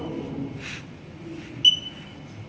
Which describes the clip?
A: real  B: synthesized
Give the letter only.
A